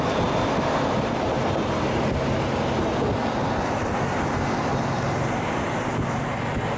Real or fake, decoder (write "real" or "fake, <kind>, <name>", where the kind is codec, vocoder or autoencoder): real